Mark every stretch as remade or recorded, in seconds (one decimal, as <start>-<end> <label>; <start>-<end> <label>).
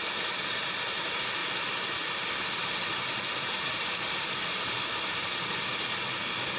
0.0-1.4 recorded; 1.4-5.4 remade; 5.4-6.6 recorded